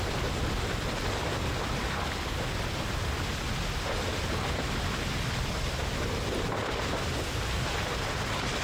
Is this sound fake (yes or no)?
no